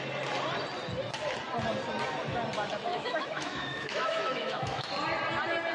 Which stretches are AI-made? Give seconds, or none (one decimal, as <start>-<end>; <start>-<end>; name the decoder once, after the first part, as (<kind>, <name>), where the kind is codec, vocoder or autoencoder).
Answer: 2.9-4.9 (autoencoder, DAC-VAE)